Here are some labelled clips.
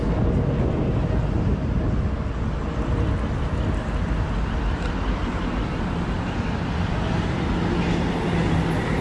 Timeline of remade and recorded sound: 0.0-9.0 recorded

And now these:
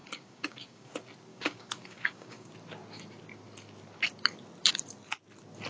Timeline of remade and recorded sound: 0.0-0.9 remade; 0.9-1.3 recorded; 1.3-2.5 remade; 2.5-5.7 recorded

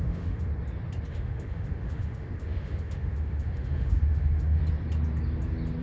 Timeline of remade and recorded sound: 0.0-0.5 remade; 0.5-1.1 recorded; 1.1-4.6 remade; 4.6-5.8 recorded